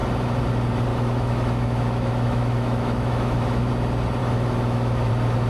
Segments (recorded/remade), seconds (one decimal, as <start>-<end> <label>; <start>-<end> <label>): 0.0-0.9 recorded; 0.9-3.7 remade; 3.7-4.2 recorded; 4.2-5.1 remade; 5.1-5.5 recorded